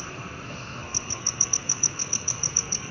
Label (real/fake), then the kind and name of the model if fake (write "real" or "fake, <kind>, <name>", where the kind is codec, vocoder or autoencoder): fake, codec, SNAC